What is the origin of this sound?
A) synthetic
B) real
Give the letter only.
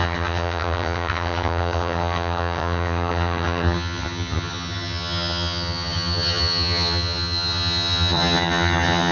A